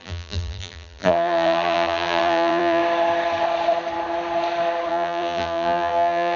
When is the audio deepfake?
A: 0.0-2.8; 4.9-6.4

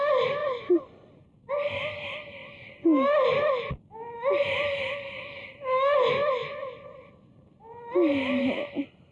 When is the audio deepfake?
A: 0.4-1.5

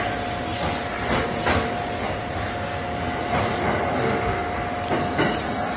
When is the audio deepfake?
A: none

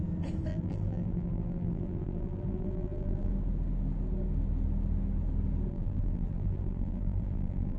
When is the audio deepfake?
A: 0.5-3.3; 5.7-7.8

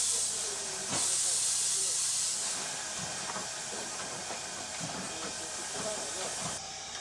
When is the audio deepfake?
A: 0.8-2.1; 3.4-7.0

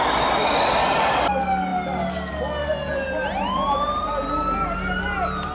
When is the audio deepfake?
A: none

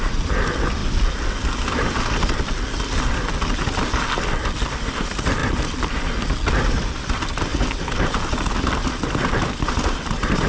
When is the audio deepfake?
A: 0.0-0.8; 4.2-5.4; 6.5-7.5; 8.9-10.5